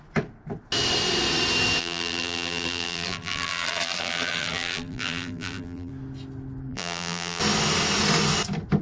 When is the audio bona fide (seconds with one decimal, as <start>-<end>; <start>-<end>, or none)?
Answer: 0.0-1.8; 5.9-6.7; 7.4-8.8